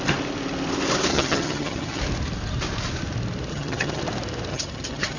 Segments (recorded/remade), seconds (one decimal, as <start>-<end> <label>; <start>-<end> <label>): 0.0-1.1 recorded; 1.1-2.0 remade; 2.0-3.5 recorded; 3.5-4.0 remade; 4.0-4.5 recorded; 4.5-5.2 remade